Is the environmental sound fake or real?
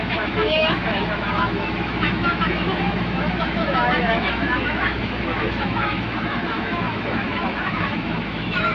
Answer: fake